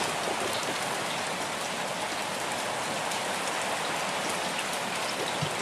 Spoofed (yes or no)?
no